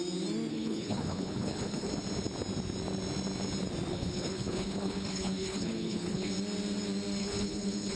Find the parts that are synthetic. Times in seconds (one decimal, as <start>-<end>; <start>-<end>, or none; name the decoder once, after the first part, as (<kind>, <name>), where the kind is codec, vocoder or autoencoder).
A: 0.5-1.9 (codec, HILCodec); 3.9-6.3; 7.2-8.0